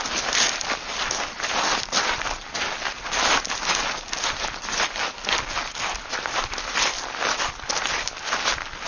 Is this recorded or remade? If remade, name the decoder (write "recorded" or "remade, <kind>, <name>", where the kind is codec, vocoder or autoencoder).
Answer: recorded